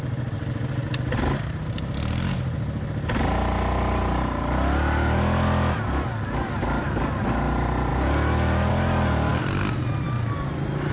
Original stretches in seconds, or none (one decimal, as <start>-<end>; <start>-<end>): 0.0-10.9